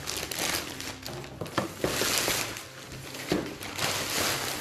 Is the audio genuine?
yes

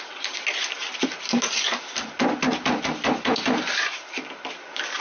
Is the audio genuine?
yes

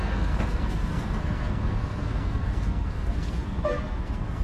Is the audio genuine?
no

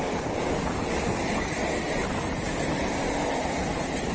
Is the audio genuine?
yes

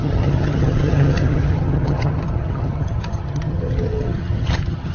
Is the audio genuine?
no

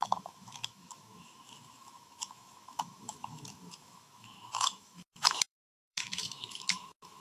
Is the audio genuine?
no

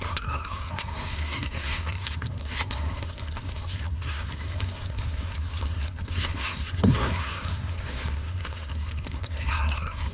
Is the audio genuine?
no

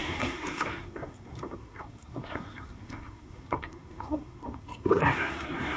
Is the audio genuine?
no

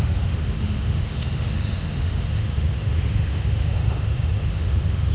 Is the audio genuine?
no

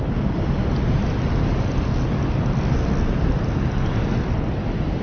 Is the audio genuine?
yes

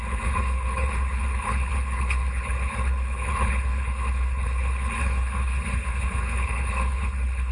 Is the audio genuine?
no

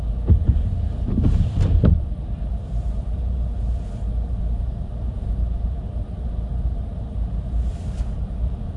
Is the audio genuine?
no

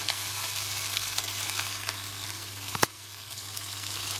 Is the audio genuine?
no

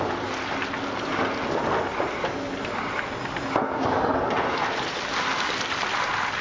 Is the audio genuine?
yes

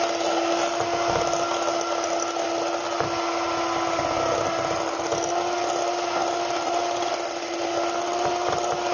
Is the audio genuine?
yes